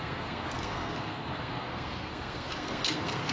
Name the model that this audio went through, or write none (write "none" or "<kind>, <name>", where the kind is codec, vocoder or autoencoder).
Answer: codec, SNAC